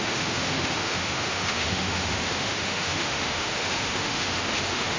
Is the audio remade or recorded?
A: remade